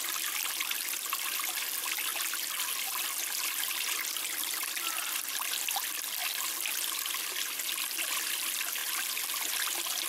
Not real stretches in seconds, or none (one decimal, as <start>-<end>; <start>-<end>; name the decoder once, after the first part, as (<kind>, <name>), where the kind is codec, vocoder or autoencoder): none